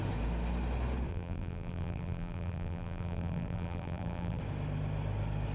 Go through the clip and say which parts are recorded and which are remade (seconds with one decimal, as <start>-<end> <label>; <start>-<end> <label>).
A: 0.0-1.1 recorded; 1.1-4.4 remade; 4.4-5.5 recorded